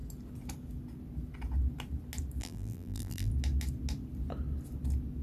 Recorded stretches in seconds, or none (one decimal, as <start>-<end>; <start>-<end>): 0.0-2.4; 3.3-5.2